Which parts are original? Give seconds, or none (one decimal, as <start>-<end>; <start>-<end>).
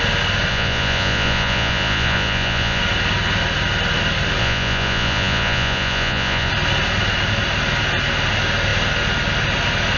0.0-0.5; 2.8-4.4; 6.5-10.0